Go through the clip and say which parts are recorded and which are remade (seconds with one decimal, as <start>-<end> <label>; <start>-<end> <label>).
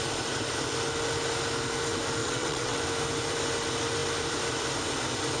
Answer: 0.0-2.2 recorded; 2.2-2.8 remade; 2.8-5.4 recorded